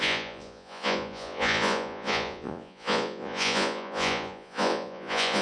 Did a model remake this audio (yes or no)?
yes